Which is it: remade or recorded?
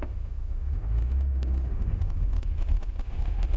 remade